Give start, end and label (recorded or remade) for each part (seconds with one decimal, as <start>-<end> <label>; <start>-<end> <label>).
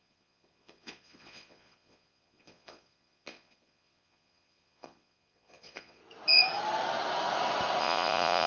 0.0-6.0 remade; 6.0-7.8 recorded; 7.8-8.5 remade